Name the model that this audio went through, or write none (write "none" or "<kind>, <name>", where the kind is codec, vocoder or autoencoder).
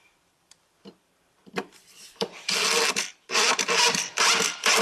vocoder, BigVGAN v2